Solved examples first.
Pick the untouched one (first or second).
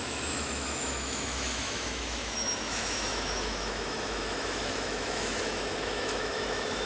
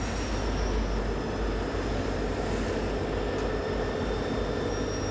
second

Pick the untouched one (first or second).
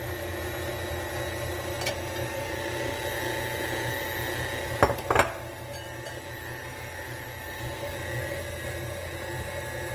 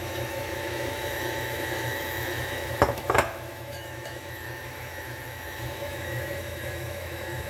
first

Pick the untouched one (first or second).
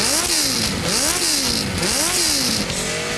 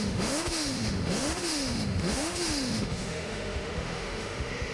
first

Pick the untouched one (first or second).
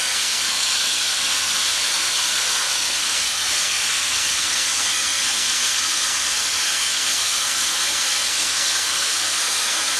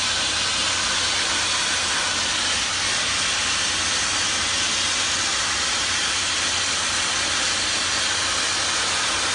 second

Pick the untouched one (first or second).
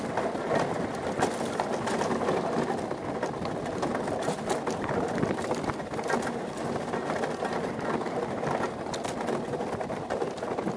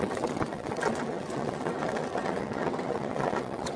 first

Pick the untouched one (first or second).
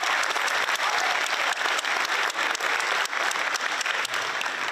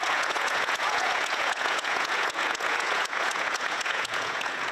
first